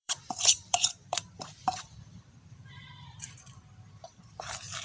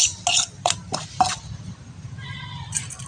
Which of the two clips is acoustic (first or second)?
second